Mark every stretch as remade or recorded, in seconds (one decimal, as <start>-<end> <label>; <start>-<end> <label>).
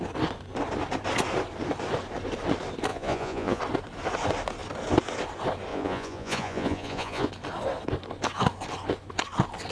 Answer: 0.0-2.9 recorded; 2.9-3.6 remade; 3.6-5.7 recorded; 5.7-7.3 remade; 7.3-9.7 recorded